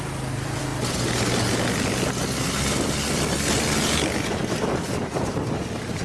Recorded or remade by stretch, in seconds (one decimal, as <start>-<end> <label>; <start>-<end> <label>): 0.0-6.0 recorded